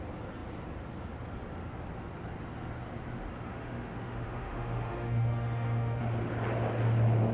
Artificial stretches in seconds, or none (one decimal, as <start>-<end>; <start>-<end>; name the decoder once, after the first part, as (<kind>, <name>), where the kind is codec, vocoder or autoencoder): 3.5-6.0 (autoencoder, DAC-VAE)